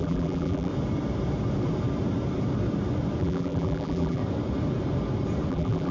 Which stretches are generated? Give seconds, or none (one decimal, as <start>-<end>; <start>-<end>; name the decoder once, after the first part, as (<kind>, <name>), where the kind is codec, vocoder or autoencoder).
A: 0.0-0.7 (vocoder, BigVGAN v2); 3.2-4.2; 5.5-5.9